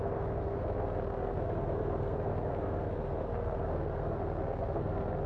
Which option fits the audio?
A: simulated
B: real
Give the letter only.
A